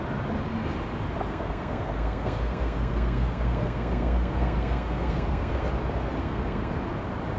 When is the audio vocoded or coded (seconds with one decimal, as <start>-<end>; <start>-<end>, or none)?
1.3-5.7; 6.2-6.7